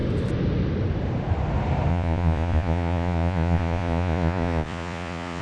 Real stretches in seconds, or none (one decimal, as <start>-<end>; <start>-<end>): 0.0-1.9